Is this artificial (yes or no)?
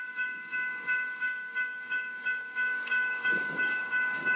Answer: yes